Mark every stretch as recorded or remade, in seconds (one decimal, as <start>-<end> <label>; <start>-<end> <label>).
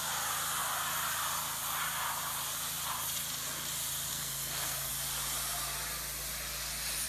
0.0-4.1 recorded; 4.1-4.9 remade; 4.9-7.1 recorded